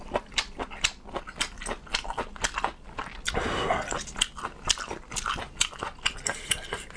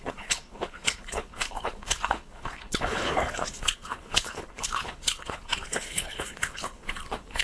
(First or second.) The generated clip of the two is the second